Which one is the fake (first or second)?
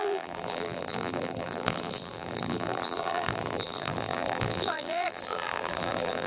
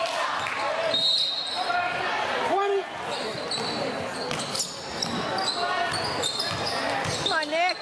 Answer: first